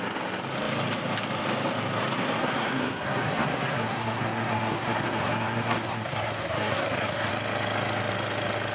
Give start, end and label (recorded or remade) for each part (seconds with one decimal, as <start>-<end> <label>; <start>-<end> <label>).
0.0-2.4 recorded; 2.4-7.3 remade; 7.3-8.7 recorded

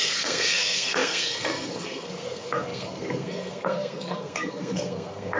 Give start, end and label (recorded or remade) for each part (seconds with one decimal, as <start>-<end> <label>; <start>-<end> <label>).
0.0-5.4 remade

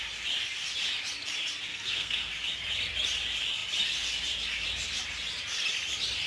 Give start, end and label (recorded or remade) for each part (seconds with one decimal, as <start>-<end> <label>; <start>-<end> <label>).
0.0-1.7 recorded; 1.7-2.3 remade; 2.3-6.3 recorded

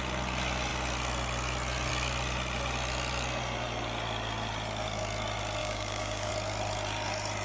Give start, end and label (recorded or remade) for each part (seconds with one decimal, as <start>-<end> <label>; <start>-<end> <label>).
0.0-5.6 recorded; 5.6-6.3 remade; 6.3-7.4 recorded

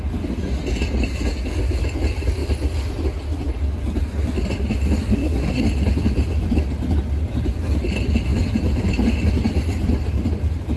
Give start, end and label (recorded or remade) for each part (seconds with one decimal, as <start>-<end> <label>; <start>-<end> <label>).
0.0-5.1 recorded; 5.1-5.6 remade; 5.6-10.8 recorded

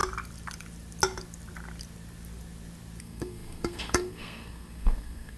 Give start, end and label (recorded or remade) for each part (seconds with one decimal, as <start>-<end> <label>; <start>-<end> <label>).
0.0-3.0 recorded; 3.0-5.4 remade

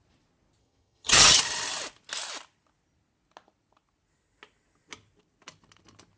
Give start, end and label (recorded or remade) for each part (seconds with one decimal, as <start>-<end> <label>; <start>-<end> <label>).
0.0-0.6 recorded; 0.6-1.4 remade; 1.4-6.2 recorded

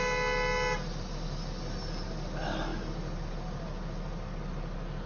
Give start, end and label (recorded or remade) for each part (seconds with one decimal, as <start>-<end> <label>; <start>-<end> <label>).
0.0-5.1 recorded